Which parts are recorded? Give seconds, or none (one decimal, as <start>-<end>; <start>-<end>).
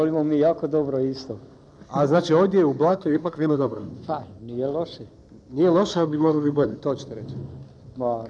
0.0-2.9; 3.9-5.9; 6.8-8.3